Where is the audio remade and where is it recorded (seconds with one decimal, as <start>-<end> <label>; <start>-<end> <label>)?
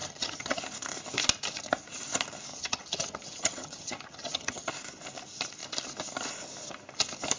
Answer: 0.0-0.6 remade; 0.6-2.5 recorded; 2.5-4.7 remade; 4.7-7.4 recorded